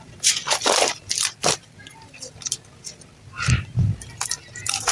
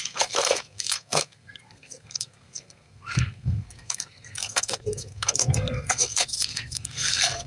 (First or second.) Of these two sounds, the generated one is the second